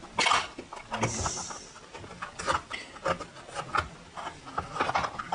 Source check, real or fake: real